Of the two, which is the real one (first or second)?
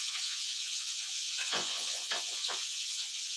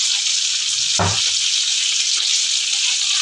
second